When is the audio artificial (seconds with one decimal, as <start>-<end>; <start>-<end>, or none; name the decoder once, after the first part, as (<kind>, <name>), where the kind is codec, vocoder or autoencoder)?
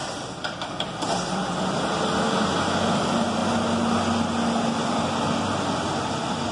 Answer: none